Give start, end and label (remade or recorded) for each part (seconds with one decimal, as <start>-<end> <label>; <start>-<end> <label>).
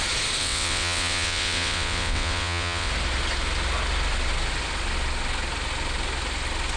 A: 0.0-0.4 recorded; 0.4-2.9 remade; 2.9-6.8 recorded